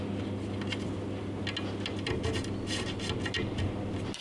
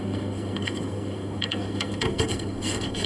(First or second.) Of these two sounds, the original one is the first